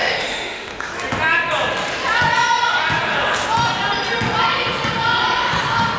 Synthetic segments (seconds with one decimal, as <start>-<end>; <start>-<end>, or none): 0.0-0.9